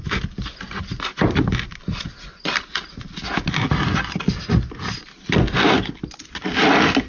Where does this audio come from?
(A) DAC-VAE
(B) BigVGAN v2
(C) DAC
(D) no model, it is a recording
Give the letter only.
D